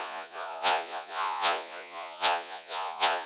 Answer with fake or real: fake